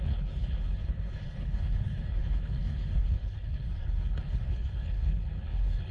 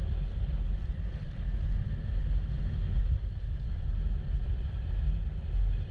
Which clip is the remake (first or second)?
first